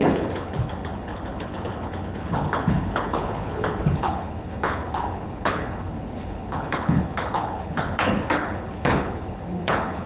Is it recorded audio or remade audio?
remade